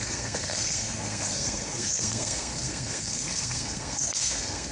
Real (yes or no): no